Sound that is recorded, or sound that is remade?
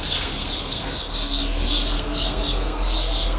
remade